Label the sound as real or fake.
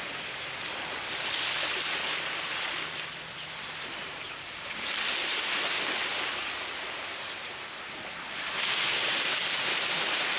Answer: real